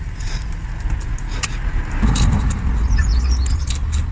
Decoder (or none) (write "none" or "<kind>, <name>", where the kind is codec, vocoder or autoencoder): none